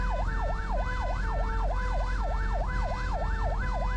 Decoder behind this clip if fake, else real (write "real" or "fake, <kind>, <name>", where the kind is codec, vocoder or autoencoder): real